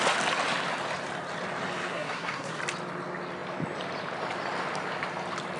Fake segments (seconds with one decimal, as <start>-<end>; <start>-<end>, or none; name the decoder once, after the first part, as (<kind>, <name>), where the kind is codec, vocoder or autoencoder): 1.9-2.6 (codec, SNAC)